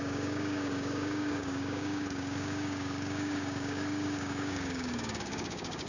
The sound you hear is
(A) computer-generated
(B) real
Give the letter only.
A